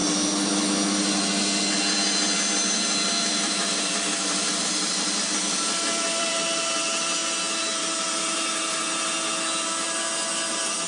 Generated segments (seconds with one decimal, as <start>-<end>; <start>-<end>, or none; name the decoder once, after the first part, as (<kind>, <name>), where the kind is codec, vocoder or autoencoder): 3.3-6.3 (vocoder, BigVGAN v2)